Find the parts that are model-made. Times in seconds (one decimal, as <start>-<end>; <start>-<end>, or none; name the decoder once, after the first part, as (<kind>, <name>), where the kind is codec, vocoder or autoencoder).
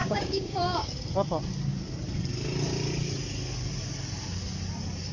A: 0.0-0.9 (codec, DAC)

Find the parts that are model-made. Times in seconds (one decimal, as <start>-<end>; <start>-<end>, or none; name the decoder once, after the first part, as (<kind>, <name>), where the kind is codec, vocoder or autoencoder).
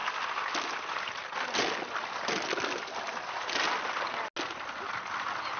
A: none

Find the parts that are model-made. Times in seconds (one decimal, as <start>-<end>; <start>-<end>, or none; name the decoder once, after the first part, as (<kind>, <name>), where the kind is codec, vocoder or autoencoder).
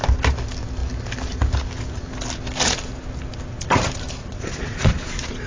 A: 4.2-5.5 (vocoder, Vocos)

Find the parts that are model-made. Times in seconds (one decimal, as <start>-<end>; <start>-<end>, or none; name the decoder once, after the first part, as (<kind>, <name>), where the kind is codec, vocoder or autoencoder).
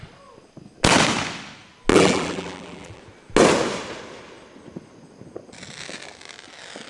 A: 1.9-3.0 (vocoder, BigVGAN v2)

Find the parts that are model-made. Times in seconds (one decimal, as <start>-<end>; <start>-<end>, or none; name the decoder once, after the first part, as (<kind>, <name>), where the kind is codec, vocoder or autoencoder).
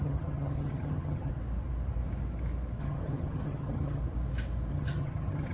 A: 0.0-1.3 (vocoder, HiFi-GAN); 2.8-4.0; 4.7-5.5